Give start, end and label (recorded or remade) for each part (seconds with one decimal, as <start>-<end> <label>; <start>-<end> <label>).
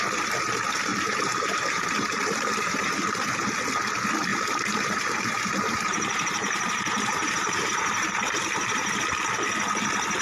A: 0.0-0.9 recorded; 0.9-2.8 remade; 2.8-4.3 recorded; 4.3-8.9 remade; 8.9-10.2 recorded